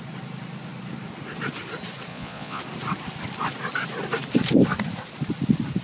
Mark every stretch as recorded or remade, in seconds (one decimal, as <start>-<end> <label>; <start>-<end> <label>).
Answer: 0.0-2.1 recorded; 2.1-2.6 remade; 2.6-5.8 recorded